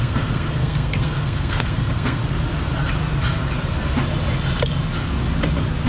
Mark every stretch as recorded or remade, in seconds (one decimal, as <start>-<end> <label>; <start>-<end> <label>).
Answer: 0.0-2.2 remade; 2.2-5.9 recorded

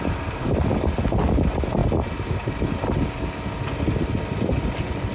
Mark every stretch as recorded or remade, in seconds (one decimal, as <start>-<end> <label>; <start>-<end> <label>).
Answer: 0.0-5.1 recorded

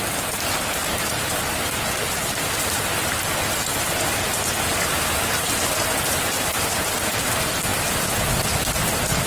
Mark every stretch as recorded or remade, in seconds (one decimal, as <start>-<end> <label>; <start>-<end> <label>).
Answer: 0.0-9.3 recorded

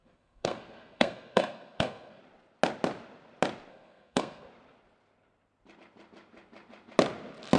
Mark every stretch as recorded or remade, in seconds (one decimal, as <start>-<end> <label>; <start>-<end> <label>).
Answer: 0.0-2.2 remade; 2.2-3.7 recorded; 3.7-4.5 remade; 4.5-7.6 recorded

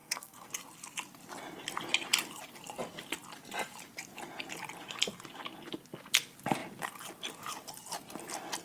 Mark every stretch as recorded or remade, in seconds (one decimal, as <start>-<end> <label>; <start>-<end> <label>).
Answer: 0.0-0.5 remade; 0.5-8.6 recorded

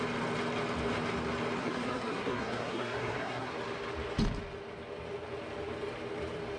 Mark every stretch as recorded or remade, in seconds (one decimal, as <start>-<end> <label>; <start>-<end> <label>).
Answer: 0.0-1.6 recorded; 1.6-3.5 remade; 3.5-6.6 recorded